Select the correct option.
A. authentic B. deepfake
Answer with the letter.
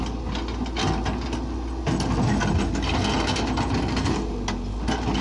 A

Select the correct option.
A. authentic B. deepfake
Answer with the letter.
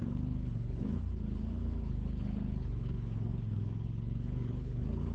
B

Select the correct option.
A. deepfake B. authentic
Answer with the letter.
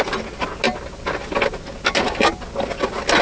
B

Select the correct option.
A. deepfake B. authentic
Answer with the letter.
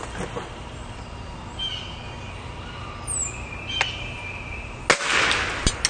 B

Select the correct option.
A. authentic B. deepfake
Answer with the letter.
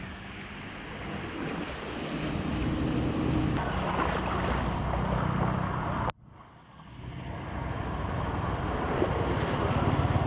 A